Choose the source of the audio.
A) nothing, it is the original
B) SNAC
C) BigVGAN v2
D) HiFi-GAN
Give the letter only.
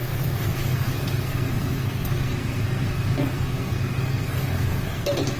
B